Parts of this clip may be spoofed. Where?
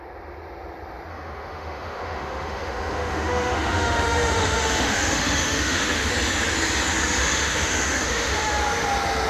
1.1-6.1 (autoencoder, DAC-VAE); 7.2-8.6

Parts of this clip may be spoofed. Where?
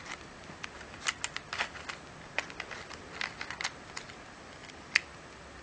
none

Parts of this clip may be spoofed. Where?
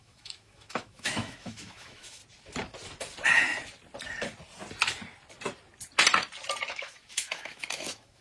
0.0-2.2 (autoencoder, DAC-VAE); 6.7-8.2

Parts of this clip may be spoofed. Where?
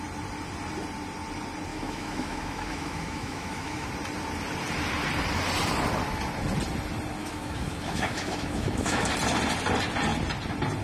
1.7-3.9 (autoencoder, DAC-VAE); 7.2-9.1